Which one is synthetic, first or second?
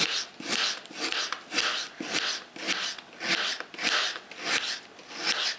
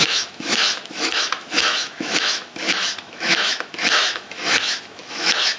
second